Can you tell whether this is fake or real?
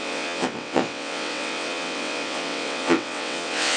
fake